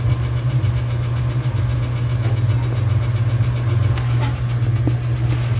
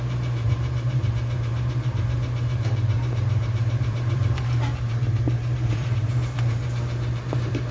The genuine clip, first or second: first